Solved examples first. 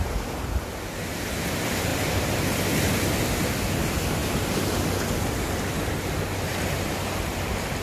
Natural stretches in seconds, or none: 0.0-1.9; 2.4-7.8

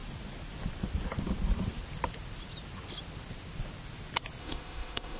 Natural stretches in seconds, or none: 0.0-4.4

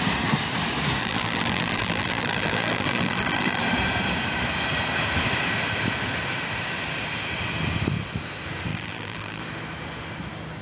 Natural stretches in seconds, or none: 0.0-1.0; 3.6-8.7; 9.4-10.6

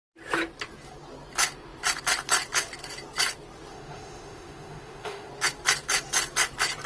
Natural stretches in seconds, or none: 0.0-3.7; 5.3-6.9

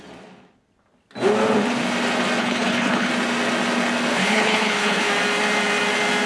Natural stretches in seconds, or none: 0.0-2.4; 3.1-4.1; 5.1-6.3

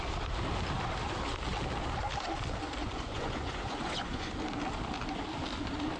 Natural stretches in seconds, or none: 0.0-2.8; 4.3-6.0